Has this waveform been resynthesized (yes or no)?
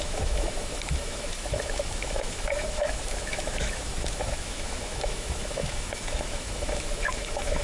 yes